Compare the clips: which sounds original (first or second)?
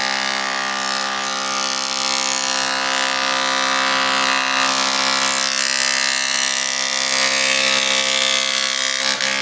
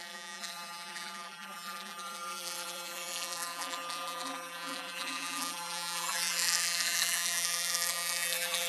first